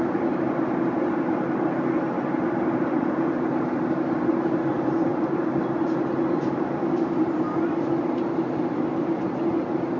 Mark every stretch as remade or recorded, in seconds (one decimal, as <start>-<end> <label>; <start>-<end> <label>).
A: 0.0-10.0 recorded